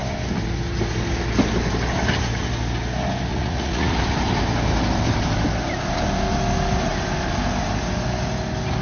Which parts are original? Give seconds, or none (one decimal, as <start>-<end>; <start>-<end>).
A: 0.0-3.3; 4.0-8.8